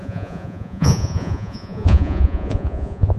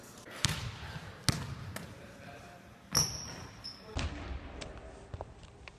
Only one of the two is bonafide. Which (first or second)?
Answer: second